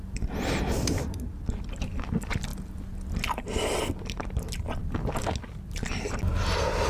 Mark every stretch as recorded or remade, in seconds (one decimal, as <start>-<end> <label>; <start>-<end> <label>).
0.0-6.9 recorded

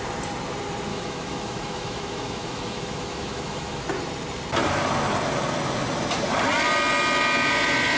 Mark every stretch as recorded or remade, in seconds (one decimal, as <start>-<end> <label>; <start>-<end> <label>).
0.0-0.9 recorded; 0.9-3.8 remade; 3.8-8.0 recorded

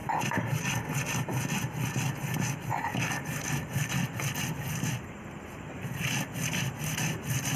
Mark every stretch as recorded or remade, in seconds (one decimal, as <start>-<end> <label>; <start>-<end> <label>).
0.0-7.6 recorded

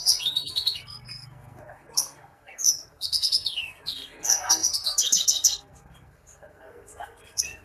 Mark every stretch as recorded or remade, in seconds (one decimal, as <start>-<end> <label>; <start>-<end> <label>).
0.0-7.6 remade

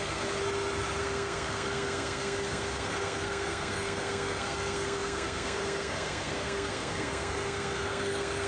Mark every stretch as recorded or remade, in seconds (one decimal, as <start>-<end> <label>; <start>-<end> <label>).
0.0-0.4 remade; 0.4-1.0 recorded; 1.0-8.5 remade

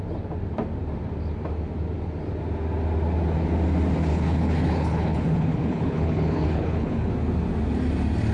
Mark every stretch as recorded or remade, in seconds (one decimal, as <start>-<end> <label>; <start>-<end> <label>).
0.0-4.1 recorded; 4.1-7.1 remade; 7.1-8.3 recorded

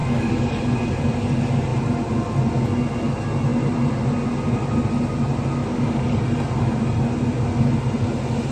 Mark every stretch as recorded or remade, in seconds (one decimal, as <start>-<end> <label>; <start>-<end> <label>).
0.0-0.6 remade; 0.6-5.6 recorded; 5.6-6.2 remade; 6.2-8.5 recorded

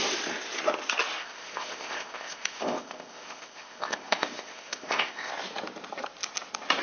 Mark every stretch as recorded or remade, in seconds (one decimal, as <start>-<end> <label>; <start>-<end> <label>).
0.0-1.2 recorded; 1.2-5.3 remade; 5.3-6.8 recorded